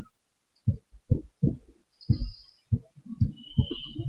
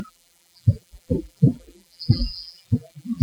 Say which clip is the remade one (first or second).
second